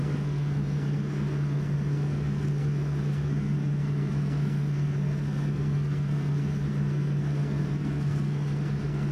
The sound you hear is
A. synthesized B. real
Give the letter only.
A